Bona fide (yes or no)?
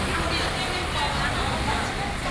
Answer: yes